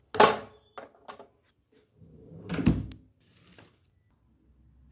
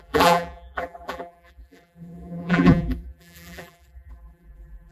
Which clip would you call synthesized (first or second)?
second